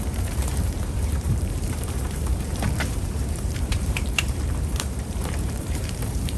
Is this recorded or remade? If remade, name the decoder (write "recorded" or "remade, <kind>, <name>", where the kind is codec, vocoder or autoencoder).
remade, vocoder, BigVGAN v2